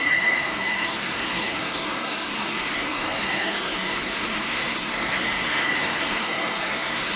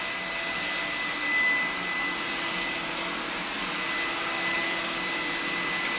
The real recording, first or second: second